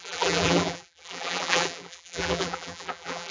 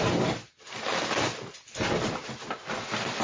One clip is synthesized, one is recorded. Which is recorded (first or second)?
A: second